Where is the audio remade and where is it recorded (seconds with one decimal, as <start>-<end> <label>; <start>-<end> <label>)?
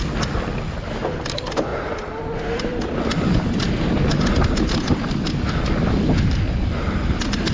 0.0-7.5 recorded